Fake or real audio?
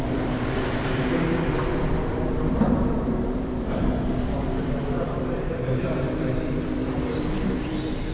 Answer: fake